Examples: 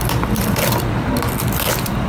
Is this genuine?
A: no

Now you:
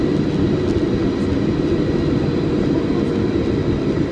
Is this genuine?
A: yes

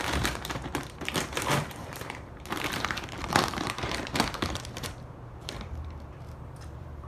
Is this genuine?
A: no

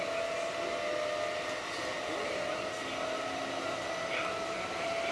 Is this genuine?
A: yes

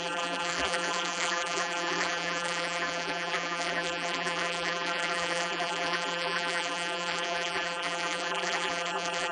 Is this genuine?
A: no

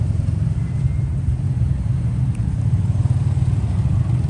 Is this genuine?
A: no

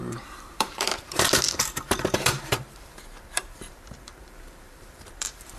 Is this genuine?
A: no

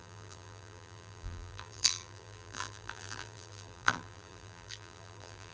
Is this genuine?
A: no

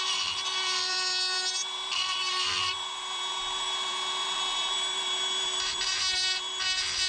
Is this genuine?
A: no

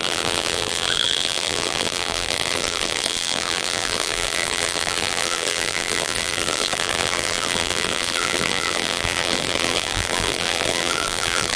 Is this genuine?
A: no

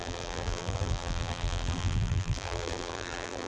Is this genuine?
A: no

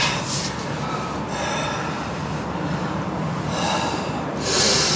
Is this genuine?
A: no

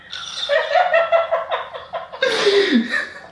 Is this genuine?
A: yes